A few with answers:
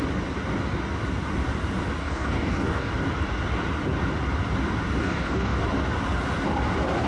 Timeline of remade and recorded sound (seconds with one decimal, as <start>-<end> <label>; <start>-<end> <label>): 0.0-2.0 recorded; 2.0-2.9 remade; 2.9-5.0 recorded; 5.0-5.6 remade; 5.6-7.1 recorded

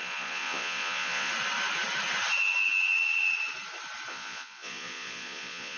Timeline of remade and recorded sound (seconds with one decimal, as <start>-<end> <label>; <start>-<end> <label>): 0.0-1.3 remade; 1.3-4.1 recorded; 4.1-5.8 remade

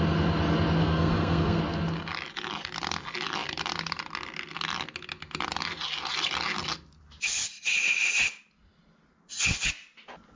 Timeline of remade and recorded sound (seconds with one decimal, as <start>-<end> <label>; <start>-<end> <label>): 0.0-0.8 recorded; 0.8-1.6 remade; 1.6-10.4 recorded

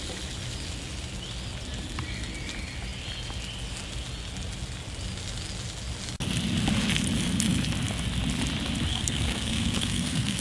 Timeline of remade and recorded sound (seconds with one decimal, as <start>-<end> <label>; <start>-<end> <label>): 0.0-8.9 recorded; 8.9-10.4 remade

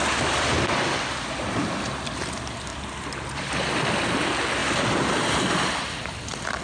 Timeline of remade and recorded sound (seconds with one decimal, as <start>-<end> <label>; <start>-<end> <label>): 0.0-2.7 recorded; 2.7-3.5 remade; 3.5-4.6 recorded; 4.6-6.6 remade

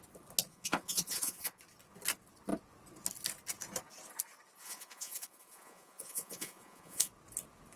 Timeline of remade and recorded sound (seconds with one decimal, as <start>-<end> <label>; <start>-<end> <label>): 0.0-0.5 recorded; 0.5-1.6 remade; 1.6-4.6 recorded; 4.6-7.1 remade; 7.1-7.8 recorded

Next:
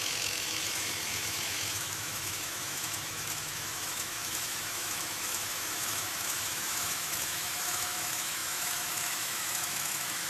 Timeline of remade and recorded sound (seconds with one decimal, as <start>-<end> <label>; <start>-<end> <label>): 0.0-10.3 remade

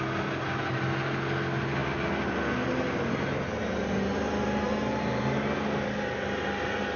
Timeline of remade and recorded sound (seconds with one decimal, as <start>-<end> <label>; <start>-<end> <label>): 0.0-7.0 recorded